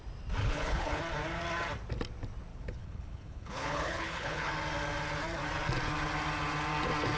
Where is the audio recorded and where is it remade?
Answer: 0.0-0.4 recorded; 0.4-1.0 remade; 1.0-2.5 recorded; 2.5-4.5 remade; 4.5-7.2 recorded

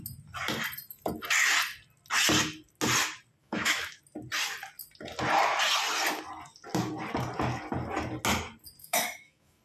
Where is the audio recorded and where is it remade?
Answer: 0.0-3.4 recorded; 3.4-4.0 remade; 4.0-8.8 recorded; 8.8-9.6 remade

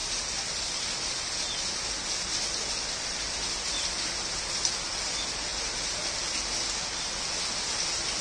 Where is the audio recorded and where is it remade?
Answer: 0.0-8.2 recorded